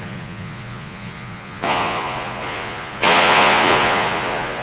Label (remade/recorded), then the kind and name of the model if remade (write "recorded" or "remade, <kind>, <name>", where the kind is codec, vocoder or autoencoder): remade, vocoder, Vocos